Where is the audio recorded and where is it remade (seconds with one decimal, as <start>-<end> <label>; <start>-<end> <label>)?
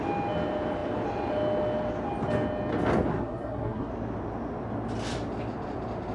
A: 0.0-3.1 recorded; 3.1-3.9 remade; 3.9-6.1 recorded